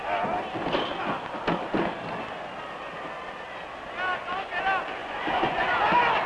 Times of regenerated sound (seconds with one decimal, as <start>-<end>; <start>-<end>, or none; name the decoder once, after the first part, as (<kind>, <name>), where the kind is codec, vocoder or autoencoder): 5.0-5.7 (vocoder, Vocos)